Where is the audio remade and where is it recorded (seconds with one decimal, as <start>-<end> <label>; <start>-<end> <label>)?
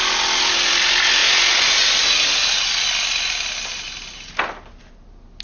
0.0-5.4 recorded